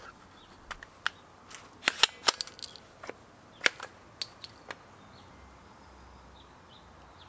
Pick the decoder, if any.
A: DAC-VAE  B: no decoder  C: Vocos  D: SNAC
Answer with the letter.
B